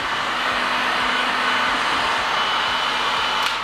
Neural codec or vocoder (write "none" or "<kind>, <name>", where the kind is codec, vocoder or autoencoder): none